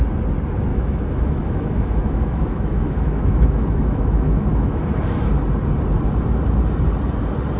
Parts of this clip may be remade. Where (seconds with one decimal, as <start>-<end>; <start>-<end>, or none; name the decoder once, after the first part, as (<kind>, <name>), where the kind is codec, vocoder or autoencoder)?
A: 0.7-5.3 (autoencoder, DAC-VAE)